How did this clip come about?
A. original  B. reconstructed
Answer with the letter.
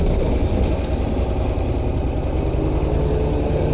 A